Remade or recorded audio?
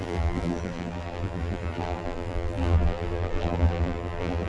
remade